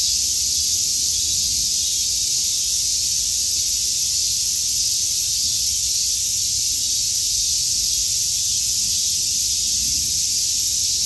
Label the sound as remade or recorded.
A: recorded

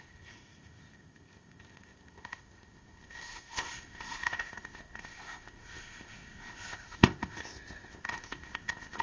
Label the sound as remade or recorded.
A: remade